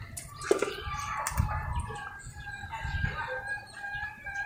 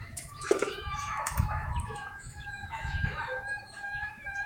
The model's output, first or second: second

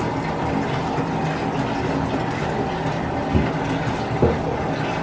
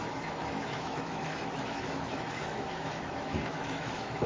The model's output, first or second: second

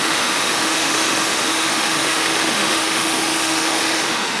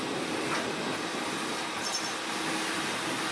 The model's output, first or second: first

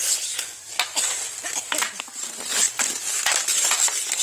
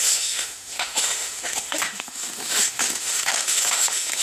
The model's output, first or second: second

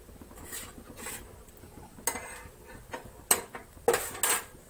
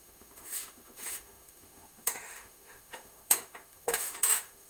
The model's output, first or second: second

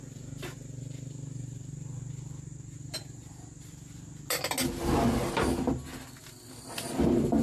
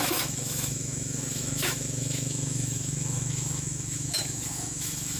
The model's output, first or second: second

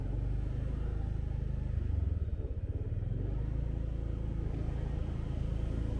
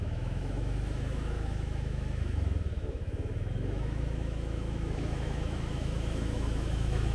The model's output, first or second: second